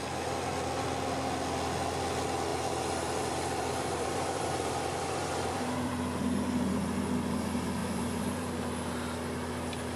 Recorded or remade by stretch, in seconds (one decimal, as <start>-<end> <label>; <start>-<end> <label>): 0.0-2.5 recorded; 2.5-5.9 remade; 5.9-7.8 recorded; 7.8-8.5 remade; 8.5-10.0 recorded